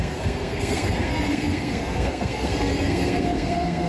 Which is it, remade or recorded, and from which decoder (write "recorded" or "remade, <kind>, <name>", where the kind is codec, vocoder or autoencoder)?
remade, codec, SNAC